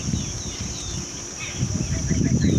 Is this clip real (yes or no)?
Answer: yes